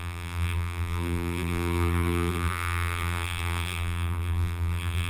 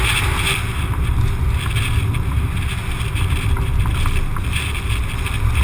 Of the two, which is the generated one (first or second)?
first